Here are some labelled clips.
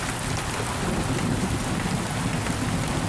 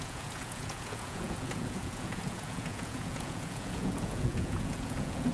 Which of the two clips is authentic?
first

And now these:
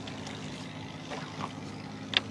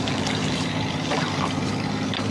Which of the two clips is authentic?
first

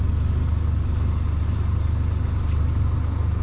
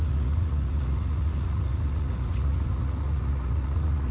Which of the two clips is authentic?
first